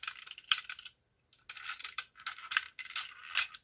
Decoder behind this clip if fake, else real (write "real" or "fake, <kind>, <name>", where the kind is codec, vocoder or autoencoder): real